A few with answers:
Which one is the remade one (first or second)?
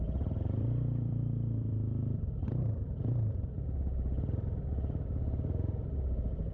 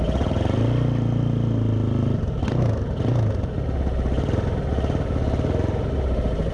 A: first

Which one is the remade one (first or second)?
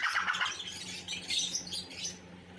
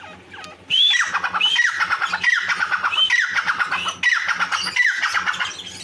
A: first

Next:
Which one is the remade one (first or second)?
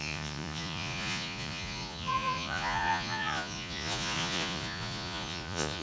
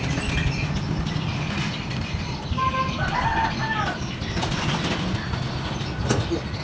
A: first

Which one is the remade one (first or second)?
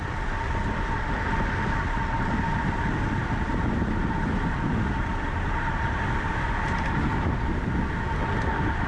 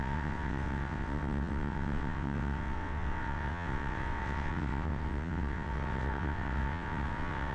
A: second